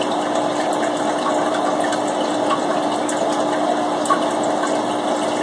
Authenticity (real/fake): real